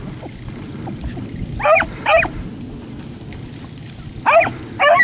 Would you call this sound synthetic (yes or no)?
no